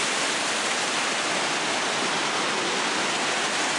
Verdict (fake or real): real